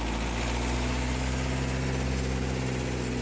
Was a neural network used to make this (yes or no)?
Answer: no